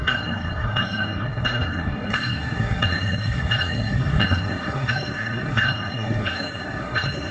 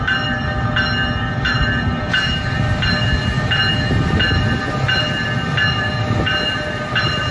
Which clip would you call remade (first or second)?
first